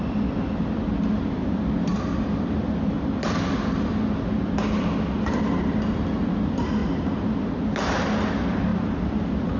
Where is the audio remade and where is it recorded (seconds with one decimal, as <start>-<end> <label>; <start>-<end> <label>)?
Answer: 0.0-9.6 recorded